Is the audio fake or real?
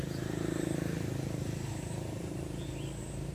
fake